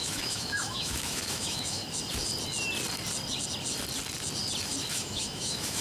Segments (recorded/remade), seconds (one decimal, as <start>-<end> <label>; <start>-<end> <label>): 0.0-1.8 remade; 1.8-4.9 recorded; 4.9-5.8 remade